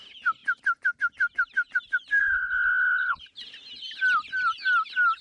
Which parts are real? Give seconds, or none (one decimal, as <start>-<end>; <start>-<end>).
0.0-2.2; 3.2-5.2